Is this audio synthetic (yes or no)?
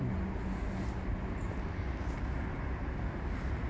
no